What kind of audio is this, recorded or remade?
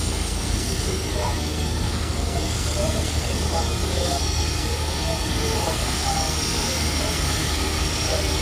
remade